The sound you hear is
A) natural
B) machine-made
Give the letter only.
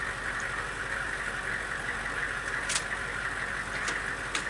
A